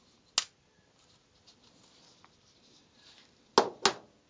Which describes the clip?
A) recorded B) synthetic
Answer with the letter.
A